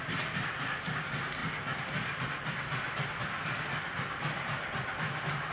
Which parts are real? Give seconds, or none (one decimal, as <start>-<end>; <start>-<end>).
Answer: 0.0-5.5